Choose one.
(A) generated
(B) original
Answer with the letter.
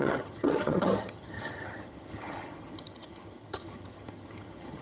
A